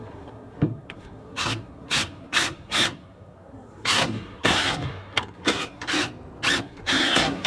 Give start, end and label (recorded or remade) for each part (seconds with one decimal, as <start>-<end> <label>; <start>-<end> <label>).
0.0-5.9 remade; 5.9-6.6 recorded; 6.6-7.5 remade